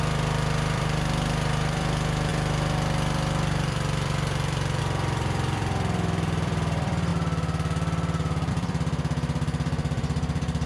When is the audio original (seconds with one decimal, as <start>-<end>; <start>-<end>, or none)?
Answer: 7.1-8.5